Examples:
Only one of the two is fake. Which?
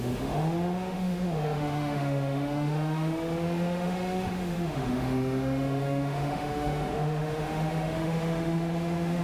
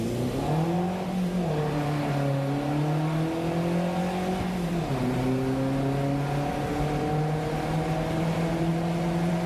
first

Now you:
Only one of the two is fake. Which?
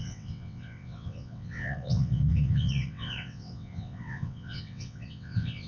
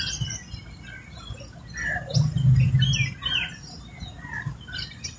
first